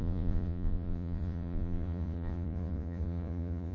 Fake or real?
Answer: fake